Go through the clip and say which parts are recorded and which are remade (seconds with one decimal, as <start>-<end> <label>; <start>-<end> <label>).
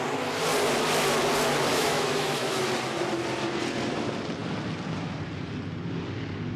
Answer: 0.0-1.7 recorded; 1.7-2.6 remade; 2.6-6.6 recorded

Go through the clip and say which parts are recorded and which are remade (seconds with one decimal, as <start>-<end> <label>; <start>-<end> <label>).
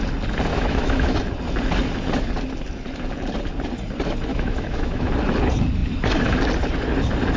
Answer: 0.0-0.5 recorded; 0.5-1.2 remade; 1.2-4.3 recorded; 4.3-5.1 remade; 5.1-7.4 recorded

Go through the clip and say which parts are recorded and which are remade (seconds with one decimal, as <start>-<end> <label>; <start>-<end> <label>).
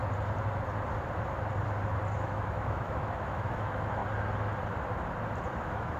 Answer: 0.0-2.2 recorded; 2.2-4.0 remade; 4.0-5.6 recorded; 5.6-6.0 remade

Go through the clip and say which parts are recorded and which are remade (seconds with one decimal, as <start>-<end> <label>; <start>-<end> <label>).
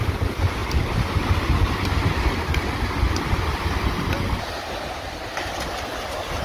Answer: 0.0-6.4 recorded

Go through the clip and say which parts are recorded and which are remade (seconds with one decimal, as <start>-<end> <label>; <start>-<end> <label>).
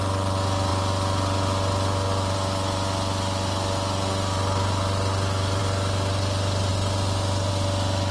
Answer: 0.0-8.1 recorded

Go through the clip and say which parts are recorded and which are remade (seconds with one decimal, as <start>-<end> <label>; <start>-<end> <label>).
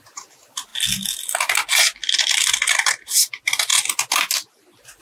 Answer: 0.0-5.0 recorded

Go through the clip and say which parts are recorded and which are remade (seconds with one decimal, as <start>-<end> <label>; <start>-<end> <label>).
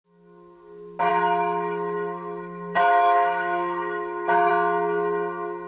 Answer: 0.0-1.1 recorded; 1.1-4.5 remade; 4.5-5.7 recorded